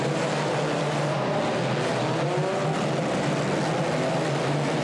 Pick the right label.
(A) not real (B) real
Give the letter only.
B